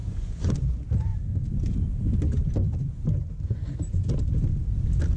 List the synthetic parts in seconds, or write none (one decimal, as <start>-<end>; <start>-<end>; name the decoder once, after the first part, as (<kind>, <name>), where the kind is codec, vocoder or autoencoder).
0.0-0.5 (vocoder, Vocos)